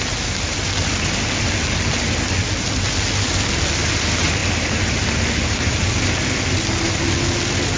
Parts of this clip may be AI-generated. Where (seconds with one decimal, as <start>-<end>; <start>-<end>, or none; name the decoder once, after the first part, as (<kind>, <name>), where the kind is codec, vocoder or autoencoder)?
none